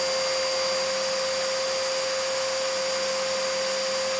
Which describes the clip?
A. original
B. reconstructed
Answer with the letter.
A